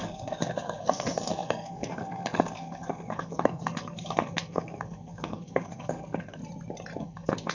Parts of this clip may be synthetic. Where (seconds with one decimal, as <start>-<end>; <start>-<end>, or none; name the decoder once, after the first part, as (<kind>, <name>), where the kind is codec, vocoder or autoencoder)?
0.0-6.4 (codec, SNAC); 7.0-7.5